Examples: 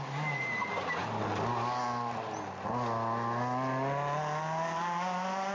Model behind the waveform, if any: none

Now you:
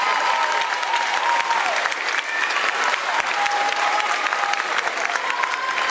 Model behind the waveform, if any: none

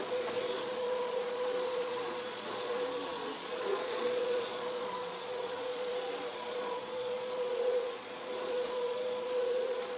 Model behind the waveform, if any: vocoder, Vocos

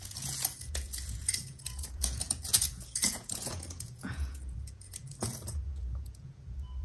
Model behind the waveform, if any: vocoder, Vocos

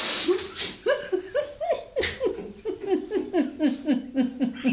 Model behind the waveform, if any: none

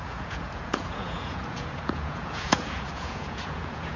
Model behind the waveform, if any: vocoder, Vocos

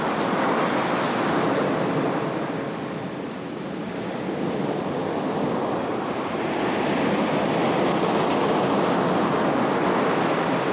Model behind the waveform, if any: none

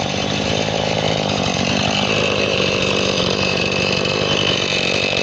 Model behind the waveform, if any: vocoder, BigVGAN v2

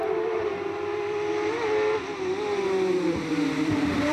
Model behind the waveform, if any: vocoder, BigVGAN v2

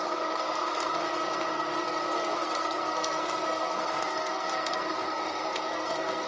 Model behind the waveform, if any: codec, SNAC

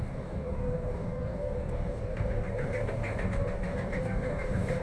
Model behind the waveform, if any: codec, DAC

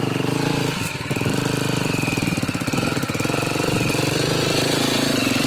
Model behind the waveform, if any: vocoder, BigVGAN v2